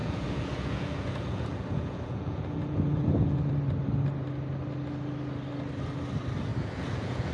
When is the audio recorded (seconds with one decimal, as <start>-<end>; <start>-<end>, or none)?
3.5-6.5